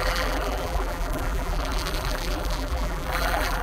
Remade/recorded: remade